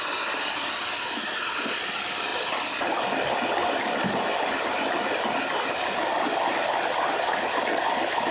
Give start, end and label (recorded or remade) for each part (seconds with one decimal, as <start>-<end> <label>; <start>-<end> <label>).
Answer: 0.0-8.3 recorded